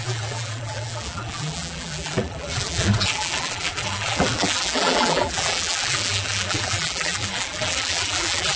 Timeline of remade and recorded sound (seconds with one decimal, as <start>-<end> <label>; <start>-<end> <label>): 0.0-8.6 remade